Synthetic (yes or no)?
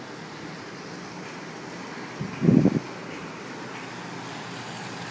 no